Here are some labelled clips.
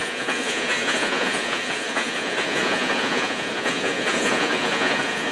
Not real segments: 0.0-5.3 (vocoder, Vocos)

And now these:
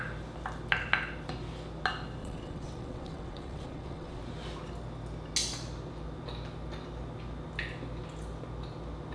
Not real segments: 2.2-4.2 (vocoder, WaveNeXt)

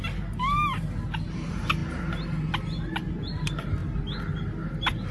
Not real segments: none

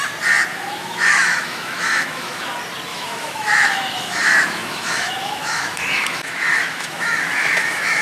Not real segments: 0.5-2.5 (autoencoder, DAC-VAE); 2.9-8.0